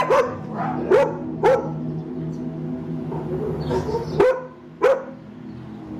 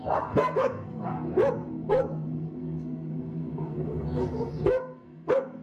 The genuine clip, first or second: first